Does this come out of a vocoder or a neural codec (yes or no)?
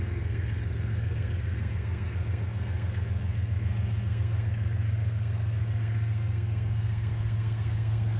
yes